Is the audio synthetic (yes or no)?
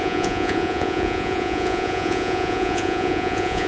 yes